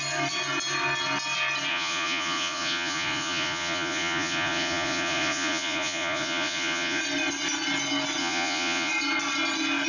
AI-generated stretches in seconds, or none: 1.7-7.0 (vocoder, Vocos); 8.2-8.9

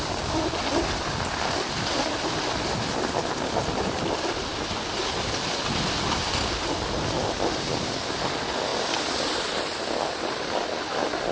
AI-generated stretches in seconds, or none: none

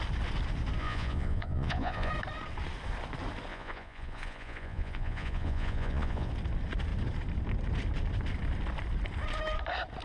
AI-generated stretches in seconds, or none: 0.8-2.1 (vocoder, Vocos); 3.5-6.3

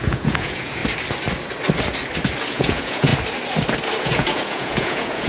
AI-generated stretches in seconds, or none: 0.0-0.8 (vocoder, Vocos); 2.5-3.1; 4.0-5.3

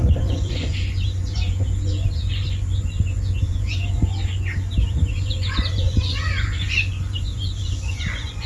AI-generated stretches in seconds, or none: 0.0-8.5 (vocoder, Vocos)